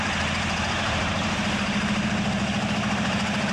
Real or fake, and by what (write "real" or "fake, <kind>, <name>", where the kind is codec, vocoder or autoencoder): fake, vocoder, BigVGAN v2